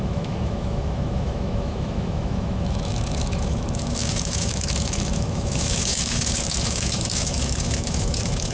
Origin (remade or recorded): remade